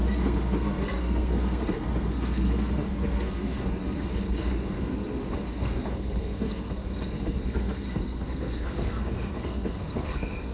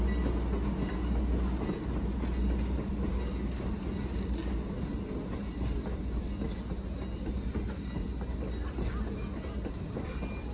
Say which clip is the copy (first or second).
first